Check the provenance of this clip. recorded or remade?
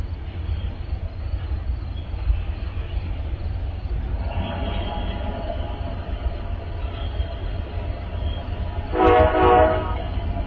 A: recorded